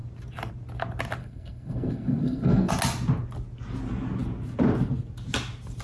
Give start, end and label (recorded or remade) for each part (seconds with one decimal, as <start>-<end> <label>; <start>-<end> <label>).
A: 0.0-1.2 recorded; 1.2-2.7 remade; 2.7-5.8 recorded